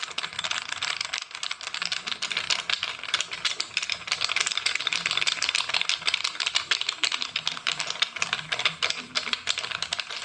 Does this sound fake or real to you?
real